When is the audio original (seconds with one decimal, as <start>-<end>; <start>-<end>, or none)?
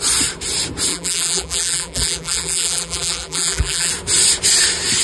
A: 0.0-0.9; 3.9-5.0